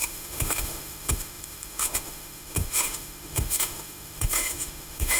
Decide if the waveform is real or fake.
fake